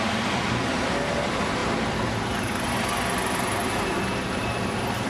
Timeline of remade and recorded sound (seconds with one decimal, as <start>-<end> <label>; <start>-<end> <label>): 0.0-5.1 recorded